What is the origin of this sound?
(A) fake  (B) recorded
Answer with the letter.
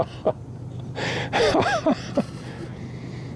B